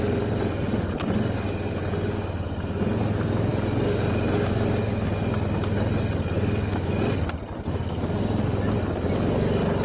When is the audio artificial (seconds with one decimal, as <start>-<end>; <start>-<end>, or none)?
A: none